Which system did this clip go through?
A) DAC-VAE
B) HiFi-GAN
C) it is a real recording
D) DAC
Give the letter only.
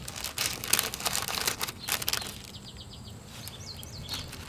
C